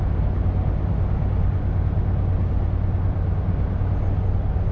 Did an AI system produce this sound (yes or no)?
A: no